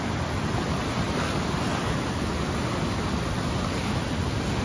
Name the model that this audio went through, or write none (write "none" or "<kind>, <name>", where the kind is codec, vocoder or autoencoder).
none